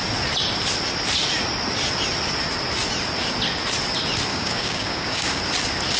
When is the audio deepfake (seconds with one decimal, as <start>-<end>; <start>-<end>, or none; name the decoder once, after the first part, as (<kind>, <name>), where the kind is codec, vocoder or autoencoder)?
4.3-5.4 (codec, DAC)